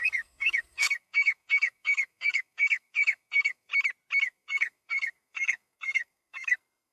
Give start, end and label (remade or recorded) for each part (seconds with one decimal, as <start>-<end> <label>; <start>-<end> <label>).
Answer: 0.0-3.7 remade; 3.7-4.2 recorded; 4.2-6.9 remade